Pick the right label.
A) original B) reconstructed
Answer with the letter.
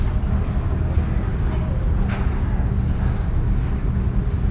A